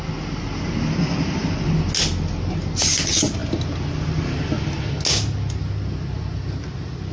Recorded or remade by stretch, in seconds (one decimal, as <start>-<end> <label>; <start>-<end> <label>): 0.0-7.1 recorded